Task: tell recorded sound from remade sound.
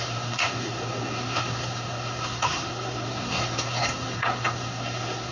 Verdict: remade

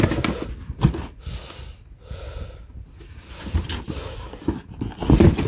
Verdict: recorded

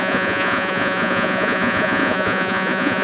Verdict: remade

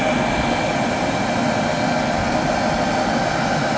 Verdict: recorded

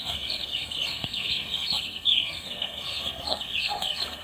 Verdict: remade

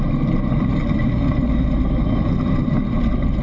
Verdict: recorded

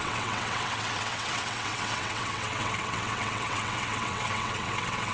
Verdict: remade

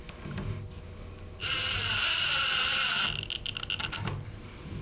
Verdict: recorded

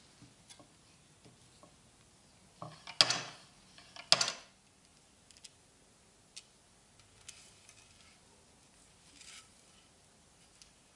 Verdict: recorded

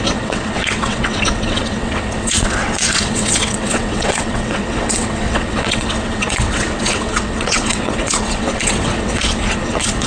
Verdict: remade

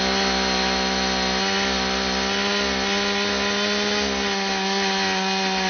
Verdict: recorded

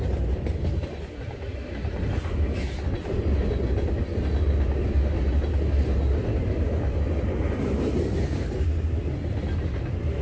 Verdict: recorded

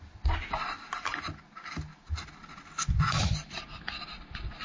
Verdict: recorded